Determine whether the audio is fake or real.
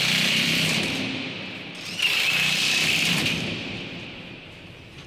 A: fake